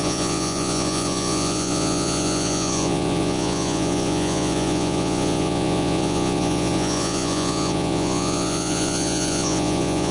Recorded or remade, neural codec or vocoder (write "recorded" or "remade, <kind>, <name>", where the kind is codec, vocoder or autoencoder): remade, vocoder, Vocos